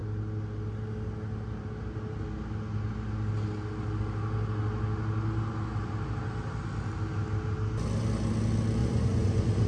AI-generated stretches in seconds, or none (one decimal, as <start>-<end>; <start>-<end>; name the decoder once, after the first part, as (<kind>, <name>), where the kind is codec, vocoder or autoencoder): 8.8-9.7 (vocoder, Vocos)